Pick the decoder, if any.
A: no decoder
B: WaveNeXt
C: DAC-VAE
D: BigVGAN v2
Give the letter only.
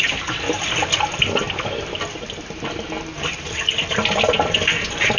A